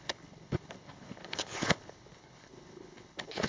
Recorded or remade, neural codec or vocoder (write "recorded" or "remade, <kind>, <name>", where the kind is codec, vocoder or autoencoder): remade, codec, HILCodec